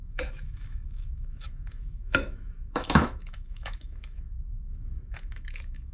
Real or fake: fake